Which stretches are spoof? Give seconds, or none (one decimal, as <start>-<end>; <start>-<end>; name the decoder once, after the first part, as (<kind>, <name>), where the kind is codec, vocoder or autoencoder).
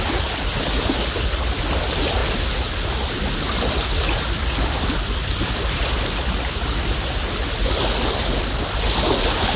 none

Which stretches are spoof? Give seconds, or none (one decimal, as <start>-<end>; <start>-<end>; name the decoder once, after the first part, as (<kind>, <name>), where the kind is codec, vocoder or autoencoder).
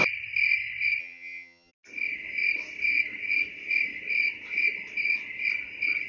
1.0-1.7 (vocoder, HiFi-GAN)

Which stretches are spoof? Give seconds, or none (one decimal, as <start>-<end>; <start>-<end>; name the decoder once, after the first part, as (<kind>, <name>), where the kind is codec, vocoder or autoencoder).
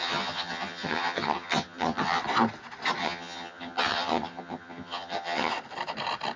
0.0-2.2 (vocoder, HiFi-GAN); 3.0-5.5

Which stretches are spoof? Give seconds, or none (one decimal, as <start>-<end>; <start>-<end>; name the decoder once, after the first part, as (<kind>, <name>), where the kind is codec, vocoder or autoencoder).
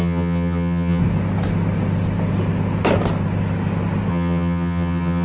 0.0-1.0 (vocoder, HiFi-GAN); 4.1-5.2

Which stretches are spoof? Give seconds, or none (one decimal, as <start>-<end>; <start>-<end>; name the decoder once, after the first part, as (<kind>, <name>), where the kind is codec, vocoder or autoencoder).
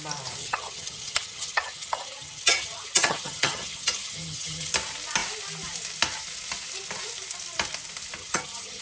0.4-4.7 (vocoder, HiFi-GAN); 8.2-8.8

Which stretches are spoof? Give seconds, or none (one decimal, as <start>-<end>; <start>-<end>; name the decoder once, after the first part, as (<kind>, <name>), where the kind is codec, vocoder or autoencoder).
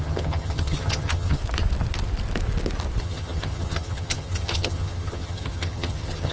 0.0-1.4 (vocoder, HiFi-GAN); 3.0-6.3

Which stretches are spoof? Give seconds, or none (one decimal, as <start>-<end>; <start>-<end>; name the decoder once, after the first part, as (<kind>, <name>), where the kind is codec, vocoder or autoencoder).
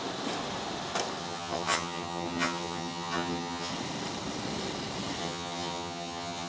1.2-3.7 (vocoder, HiFi-GAN); 5.2-6.5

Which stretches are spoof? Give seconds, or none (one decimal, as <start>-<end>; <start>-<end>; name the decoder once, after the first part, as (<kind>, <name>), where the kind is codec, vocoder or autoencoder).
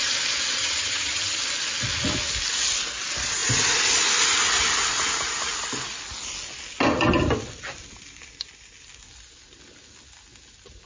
0.6-1.4 (vocoder, HiFi-GAN)